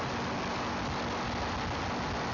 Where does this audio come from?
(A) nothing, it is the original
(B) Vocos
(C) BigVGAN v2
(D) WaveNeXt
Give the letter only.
A